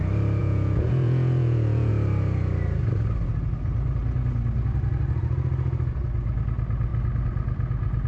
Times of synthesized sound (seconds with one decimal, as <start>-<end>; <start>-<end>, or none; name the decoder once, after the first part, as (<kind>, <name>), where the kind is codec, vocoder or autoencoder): 0.4-1.9 (vocoder, Vocos)